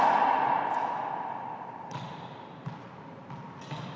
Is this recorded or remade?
recorded